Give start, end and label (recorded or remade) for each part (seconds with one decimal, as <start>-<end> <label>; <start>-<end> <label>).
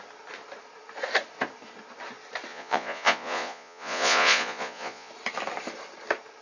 0.0-2.5 recorded; 2.5-5.1 remade; 5.1-6.4 recorded